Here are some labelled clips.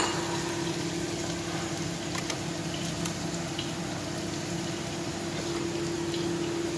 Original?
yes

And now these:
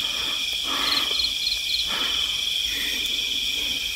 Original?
yes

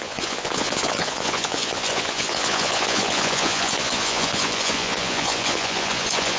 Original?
no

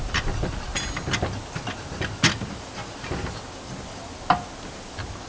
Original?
yes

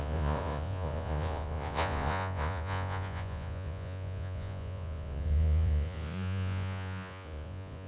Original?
no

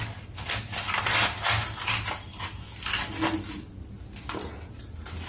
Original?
yes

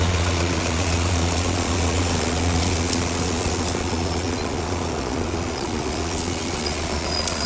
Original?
no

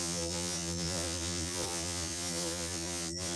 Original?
no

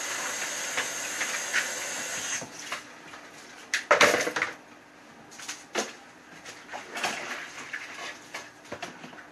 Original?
yes